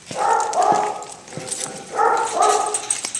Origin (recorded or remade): recorded